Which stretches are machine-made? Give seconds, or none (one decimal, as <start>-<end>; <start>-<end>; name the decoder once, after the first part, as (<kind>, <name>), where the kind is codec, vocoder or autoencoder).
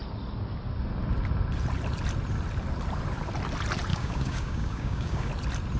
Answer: 3.9-5.3 (codec, DAC)